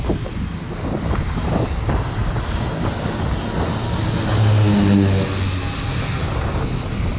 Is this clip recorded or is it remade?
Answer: recorded